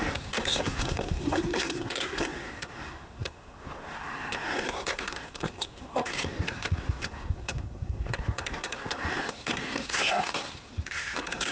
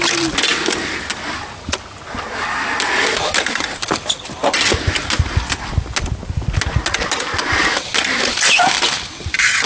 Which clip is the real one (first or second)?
second